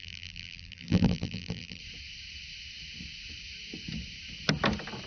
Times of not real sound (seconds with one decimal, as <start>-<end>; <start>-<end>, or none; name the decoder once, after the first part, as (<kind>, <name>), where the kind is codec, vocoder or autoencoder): 0.0-1.8 (vocoder, BigVGAN v2)